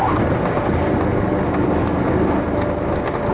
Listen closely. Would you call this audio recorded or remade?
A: recorded